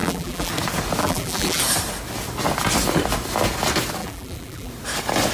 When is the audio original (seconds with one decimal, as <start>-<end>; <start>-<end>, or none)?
0.5-1.0; 1.6-4.0; 4.7-5.3